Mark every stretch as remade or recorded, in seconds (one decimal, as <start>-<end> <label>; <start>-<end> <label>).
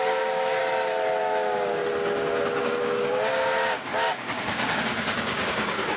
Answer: 0.0-0.6 remade; 0.6-1.2 recorded; 1.2-1.8 remade; 1.8-2.6 recorded; 2.6-6.0 remade